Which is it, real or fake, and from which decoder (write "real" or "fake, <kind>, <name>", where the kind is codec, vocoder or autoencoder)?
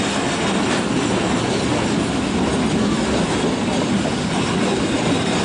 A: real